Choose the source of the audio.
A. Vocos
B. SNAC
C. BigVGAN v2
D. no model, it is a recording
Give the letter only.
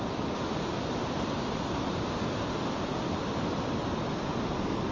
D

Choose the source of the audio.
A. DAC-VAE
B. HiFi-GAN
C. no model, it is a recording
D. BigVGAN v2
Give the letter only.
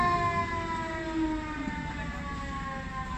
C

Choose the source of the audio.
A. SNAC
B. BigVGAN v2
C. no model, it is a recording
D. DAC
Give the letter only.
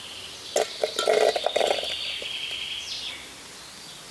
C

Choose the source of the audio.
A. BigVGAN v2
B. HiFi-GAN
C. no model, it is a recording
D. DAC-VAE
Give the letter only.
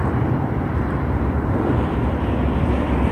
A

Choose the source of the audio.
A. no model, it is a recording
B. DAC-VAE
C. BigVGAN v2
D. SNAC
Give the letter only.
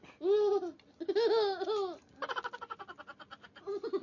A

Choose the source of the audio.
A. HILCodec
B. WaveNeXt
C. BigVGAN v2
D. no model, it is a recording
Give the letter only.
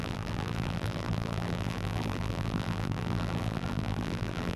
C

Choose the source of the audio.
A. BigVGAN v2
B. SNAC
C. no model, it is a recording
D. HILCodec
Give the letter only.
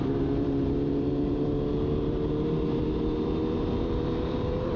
A